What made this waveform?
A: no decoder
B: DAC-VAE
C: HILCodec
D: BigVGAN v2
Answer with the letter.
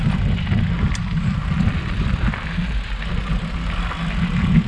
A